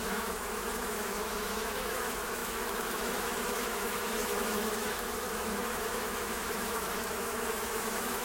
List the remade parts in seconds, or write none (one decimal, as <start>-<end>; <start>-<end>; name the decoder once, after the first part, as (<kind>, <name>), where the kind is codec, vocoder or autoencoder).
0.0-8.2 (autoencoder, DAC-VAE)